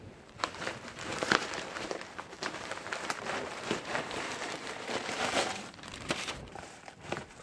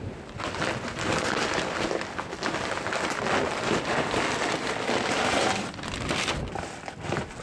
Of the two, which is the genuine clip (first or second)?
second